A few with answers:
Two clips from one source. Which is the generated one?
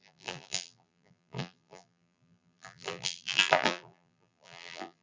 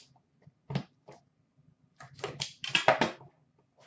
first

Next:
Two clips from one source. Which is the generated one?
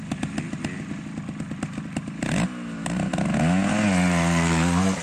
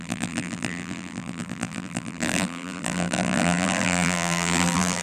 second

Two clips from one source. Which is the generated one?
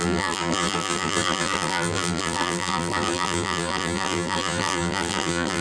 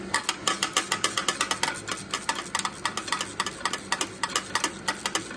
first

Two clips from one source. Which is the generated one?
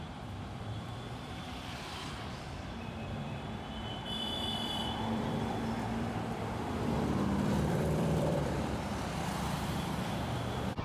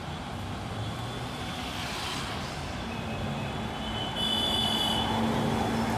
first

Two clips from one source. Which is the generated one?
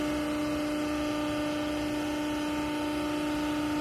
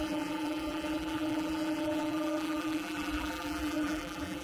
second